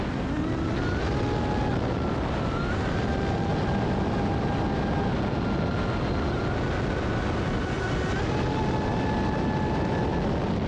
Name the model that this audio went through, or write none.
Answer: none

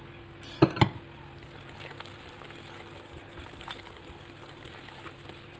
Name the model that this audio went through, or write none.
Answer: none